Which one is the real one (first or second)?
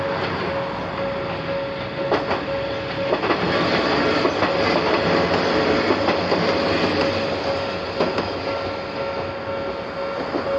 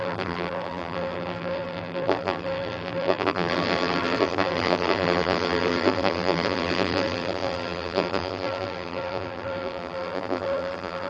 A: first